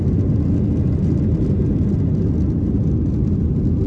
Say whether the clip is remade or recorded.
recorded